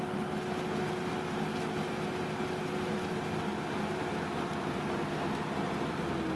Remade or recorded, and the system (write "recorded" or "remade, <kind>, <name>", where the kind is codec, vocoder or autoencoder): recorded